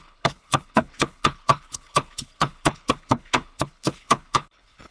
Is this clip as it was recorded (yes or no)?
no